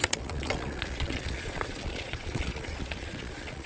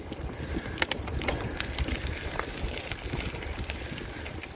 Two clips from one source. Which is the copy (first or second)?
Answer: first